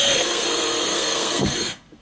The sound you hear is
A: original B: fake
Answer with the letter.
B